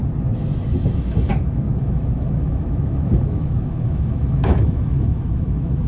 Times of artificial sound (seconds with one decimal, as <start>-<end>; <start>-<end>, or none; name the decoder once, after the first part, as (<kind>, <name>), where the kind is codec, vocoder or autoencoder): 0.9-5.9 (autoencoder, DAC-VAE)